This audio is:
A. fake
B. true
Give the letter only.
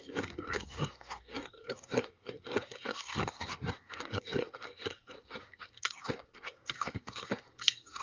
A